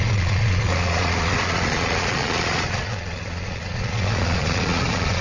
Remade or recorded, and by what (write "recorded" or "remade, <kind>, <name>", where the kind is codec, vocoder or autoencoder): remade, vocoder, Vocos